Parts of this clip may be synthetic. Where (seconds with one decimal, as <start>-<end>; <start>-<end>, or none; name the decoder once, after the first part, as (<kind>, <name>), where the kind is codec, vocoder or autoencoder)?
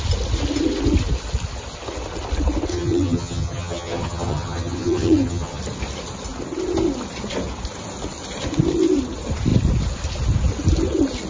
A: 2.7-5.6 (vocoder, HiFi-GAN)